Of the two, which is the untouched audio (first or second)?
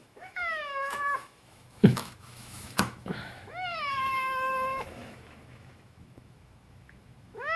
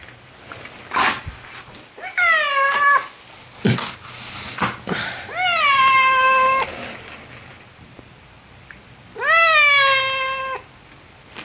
second